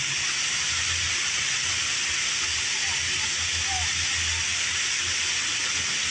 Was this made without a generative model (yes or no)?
yes